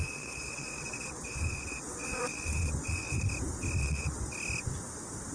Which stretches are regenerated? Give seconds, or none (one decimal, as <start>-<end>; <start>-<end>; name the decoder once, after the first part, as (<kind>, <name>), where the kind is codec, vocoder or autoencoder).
0.0-3.2 (vocoder, WaveNeXt); 3.8-4.3